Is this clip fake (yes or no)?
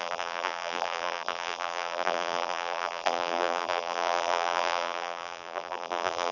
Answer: yes